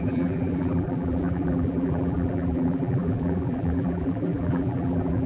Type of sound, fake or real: fake